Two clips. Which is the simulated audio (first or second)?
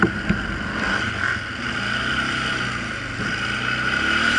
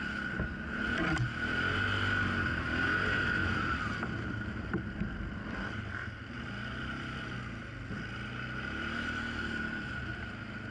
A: second